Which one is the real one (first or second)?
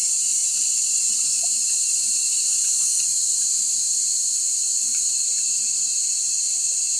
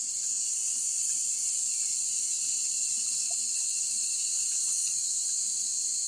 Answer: second